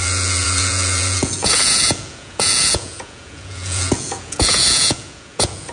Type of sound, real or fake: fake